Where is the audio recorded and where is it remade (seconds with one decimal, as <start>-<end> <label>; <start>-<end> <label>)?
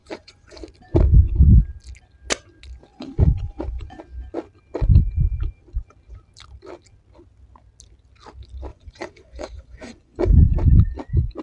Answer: 0.0-0.6 remade; 0.6-2.9 recorded; 2.9-4.0 remade; 4.0-8.7 recorded; 8.7-10.5 remade; 10.5-11.4 recorded